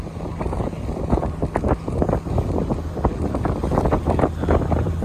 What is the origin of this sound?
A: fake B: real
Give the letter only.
B